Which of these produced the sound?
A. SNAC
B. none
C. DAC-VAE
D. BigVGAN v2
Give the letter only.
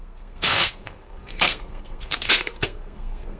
A